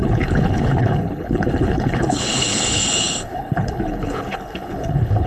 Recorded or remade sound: remade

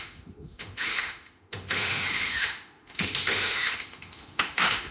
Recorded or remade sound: remade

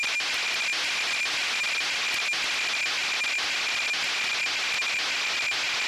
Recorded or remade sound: recorded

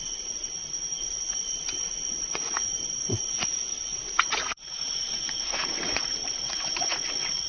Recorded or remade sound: remade